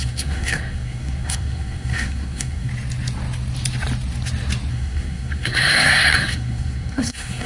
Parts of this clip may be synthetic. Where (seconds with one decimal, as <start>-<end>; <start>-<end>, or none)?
0.0-2.7; 4.7-7.5